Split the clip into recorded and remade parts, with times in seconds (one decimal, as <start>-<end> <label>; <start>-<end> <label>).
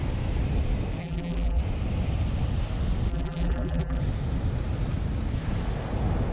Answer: 0.0-1.0 recorded; 1.0-1.6 remade; 1.6-3.1 recorded; 3.1-4.0 remade; 4.0-6.3 recorded